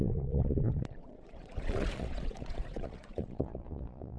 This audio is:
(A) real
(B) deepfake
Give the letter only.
B